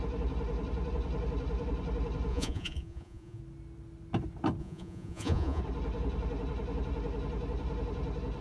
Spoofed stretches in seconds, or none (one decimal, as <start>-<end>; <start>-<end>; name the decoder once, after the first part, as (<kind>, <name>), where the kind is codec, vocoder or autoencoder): 2.3-3.4 (vocoder, Vocos); 4.6-5.6